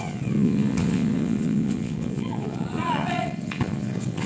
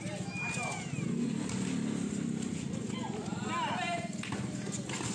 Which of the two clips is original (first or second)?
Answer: second